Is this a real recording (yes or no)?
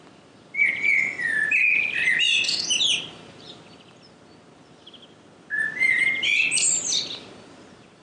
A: yes